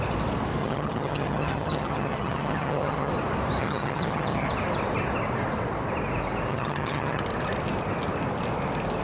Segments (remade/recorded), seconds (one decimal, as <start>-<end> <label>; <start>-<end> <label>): 0.0-0.6 recorded; 0.6-3.1 remade; 3.1-3.6 recorded; 3.6-4.5 remade; 4.5-6.5 recorded; 6.5-7.2 remade; 7.2-9.0 recorded